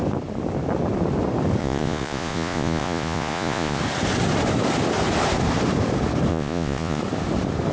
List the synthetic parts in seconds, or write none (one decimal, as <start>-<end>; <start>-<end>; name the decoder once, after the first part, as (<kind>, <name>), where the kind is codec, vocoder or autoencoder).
1.6-3.8 (vocoder, Vocos); 6.3-7.0